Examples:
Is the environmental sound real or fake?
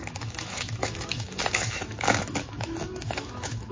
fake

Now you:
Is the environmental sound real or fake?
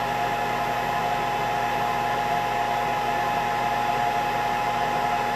real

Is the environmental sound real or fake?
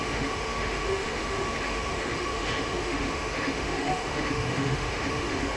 fake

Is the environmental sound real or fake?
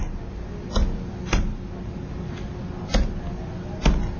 real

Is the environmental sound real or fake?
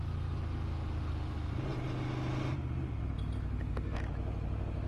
real